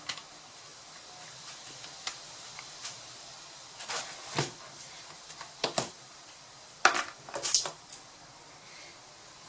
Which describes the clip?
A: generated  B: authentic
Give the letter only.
B